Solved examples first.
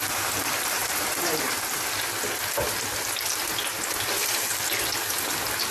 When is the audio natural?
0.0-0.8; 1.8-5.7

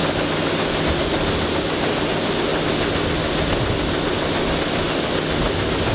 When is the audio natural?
0.0-5.9

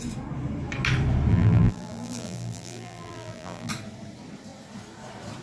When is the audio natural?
0.0-1.3; 3.7-5.4

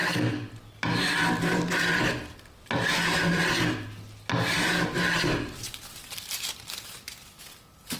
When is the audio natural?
0.0-8.0

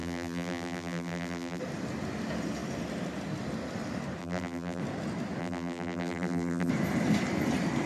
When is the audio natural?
1.6-4.2; 4.8-5.4; 6.7-7.9

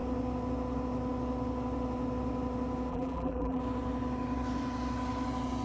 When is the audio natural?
0.0-2.9; 3.6-5.6

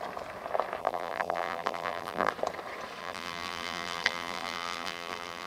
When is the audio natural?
0.0-0.8; 2.3-3.0